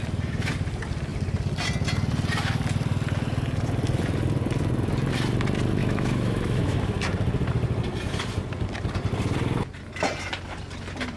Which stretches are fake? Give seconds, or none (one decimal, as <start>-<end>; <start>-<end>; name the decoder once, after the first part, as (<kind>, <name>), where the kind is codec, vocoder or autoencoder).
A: 5.8-6.8 (autoencoder, DAC-VAE)